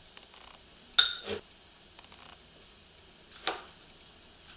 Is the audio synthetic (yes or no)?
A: no